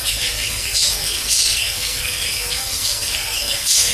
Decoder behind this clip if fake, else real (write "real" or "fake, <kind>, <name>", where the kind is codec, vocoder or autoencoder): fake, codec, SNAC